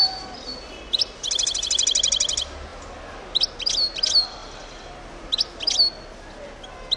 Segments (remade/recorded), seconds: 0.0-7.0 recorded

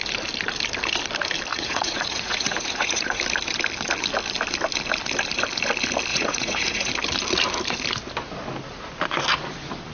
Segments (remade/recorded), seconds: 0.0-1.5 recorded; 1.5-3.2 remade; 3.2-6.1 recorded; 6.1-6.9 remade; 6.9-9.9 recorded

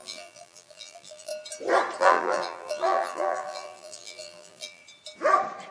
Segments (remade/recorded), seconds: 0.0-1.3 remade; 1.3-2.0 recorded; 2.0-4.8 remade; 4.8-5.7 recorded

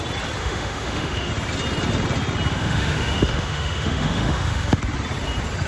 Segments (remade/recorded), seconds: 0.0-0.4 recorded; 0.4-1.3 remade; 1.3-2.5 recorded; 2.5-4.8 remade; 4.8-5.7 recorded

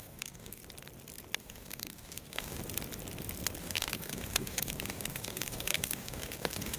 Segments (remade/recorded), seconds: 0.0-0.6 remade; 0.6-1.4 recorded; 1.4-2.6 remade; 2.6-3.6 recorded; 3.6-6.8 remade

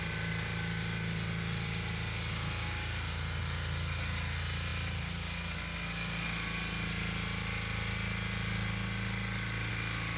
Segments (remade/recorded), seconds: 0.0-10.2 recorded

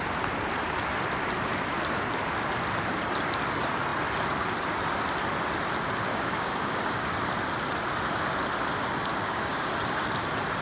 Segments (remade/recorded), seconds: 0.0-6.1 recorded; 6.1-7.2 remade; 7.2-9.1 recorded; 9.1-9.7 remade; 9.7-10.6 recorded

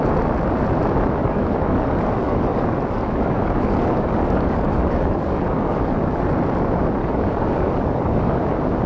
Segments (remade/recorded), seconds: 0.0-1.2 recorded; 1.2-6.3 remade; 6.3-7.0 recorded; 7.0-8.4 remade; 8.4-8.9 recorded